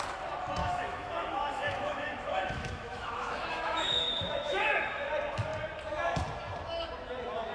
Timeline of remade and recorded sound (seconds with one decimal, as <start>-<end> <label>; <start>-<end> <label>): 0.0-0.6 recorded; 0.6-5.1 remade; 5.1-7.5 recorded